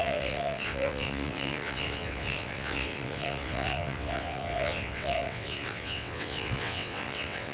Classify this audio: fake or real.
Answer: fake